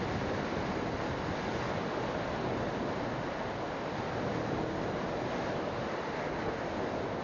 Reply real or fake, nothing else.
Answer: real